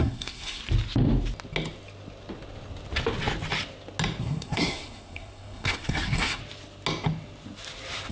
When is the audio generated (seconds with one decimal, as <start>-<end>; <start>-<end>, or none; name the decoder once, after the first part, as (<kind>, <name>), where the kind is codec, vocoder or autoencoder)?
0.0-0.6 (codec, SNAC); 4.2-6.4